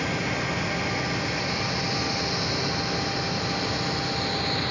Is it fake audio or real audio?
real